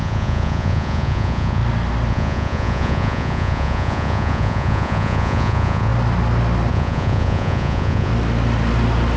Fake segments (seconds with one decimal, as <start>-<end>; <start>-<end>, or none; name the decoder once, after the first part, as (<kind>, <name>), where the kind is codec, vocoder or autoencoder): 0.0-1.6 (vocoder, Vocos); 2.1-5.9; 6.7-8.1